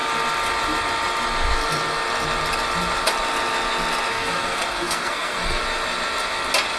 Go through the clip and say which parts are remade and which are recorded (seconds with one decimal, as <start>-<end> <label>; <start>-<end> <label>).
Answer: 0.0-4.1 recorded; 4.1-5.6 remade; 5.6-6.8 recorded